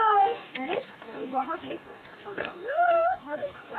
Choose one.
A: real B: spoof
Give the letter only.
B